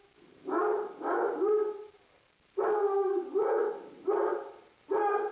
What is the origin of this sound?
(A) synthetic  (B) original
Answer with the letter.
B